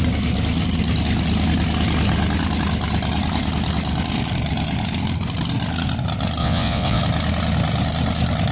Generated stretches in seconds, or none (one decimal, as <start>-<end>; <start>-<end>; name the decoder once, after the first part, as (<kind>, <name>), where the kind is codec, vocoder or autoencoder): 6.4-7.0 (vocoder, WaveNeXt)